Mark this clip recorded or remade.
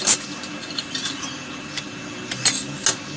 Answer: recorded